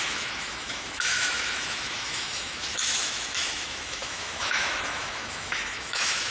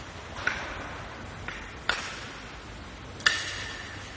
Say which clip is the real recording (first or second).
second